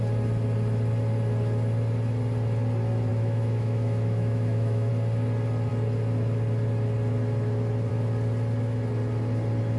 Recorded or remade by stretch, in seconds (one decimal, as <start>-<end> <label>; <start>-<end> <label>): 0.0-3.1 recorded; 3.1-4.9 remade; 4.9-9.8 recorded